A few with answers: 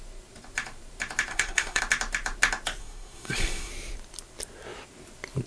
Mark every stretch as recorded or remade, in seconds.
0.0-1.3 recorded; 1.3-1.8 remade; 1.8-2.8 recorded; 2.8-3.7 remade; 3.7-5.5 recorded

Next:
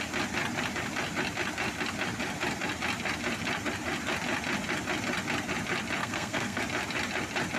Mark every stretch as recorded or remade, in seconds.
0.0-6.0 recorded; 6.0-6.6 remade; 6.6-7.6 recorded

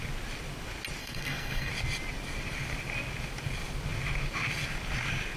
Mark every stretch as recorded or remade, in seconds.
0.0-1.0 recorded; 1.0-1.7 remade; 1.7-5.4 recorded

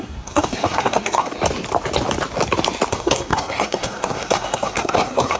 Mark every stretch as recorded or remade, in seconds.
0.0-1.3 remade; 1.3-2.9 recorded; 2.9-5.4 remade

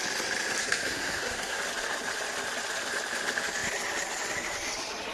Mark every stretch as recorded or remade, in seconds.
0.0-0.6 recorded; 0.6-1.6 remade; 1.6-5.1 recorded

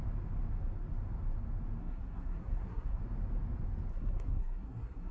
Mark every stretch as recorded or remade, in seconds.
0.0-1.8 recorded; 1.8-3.0 remade; 3.0-3.9 recorded; 3.9-5.1 remade

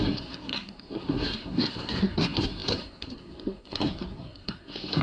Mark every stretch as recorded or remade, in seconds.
0.0-5.0 remade